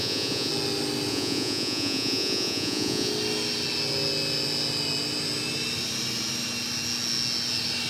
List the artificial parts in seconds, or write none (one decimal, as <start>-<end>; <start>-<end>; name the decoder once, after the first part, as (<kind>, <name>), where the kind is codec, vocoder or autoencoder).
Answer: 0.0-0.5 (vocoder, Vocos); 1.1-3.1